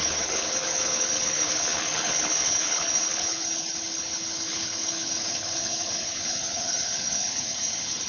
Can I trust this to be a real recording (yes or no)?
no